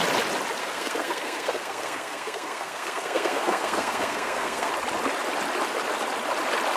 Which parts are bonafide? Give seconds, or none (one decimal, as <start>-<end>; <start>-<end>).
0.0-0.6; 4.7-6.8